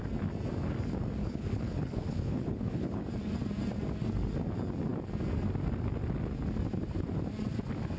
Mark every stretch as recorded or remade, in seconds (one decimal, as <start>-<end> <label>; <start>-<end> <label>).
0.0-1.2 recorded; 1.2-3.0 remade; 3.0-8.0 recorded